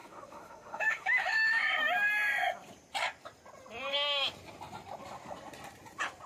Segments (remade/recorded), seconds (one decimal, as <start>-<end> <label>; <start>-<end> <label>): 0.0-1.6 remade; 1.6-6.3 recorded

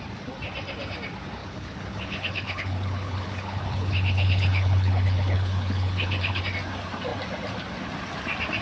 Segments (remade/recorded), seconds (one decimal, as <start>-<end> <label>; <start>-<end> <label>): 0.0-1.4 recorded; 1.4-6.4 remade; 6.4-8.6 recorded

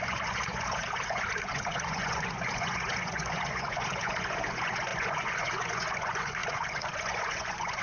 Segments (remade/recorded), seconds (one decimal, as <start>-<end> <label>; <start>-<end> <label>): 0.0-7.8 remade

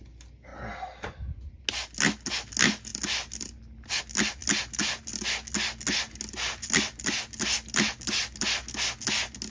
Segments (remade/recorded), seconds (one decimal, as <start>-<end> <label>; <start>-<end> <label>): 0.0-9.5 recorded

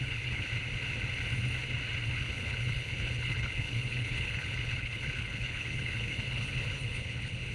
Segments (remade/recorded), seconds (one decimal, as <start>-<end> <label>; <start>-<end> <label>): 0.0-0.5 remade; 0.5-2.1 recorded; 2.1-7.5 remade

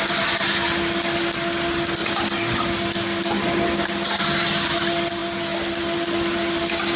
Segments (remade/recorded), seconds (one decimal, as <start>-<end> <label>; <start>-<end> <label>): 0.0-7.0 recorded

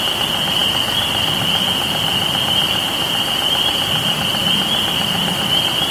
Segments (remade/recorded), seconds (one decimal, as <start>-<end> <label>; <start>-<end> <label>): 0.0-5.9 recorded